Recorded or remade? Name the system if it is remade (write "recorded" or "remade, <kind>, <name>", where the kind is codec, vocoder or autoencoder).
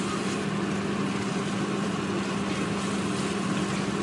recorded